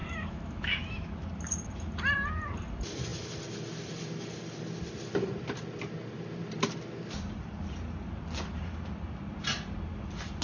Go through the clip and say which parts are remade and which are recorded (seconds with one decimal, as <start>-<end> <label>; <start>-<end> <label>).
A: 0.0-1.3 remade; 1.3-10.4 recorded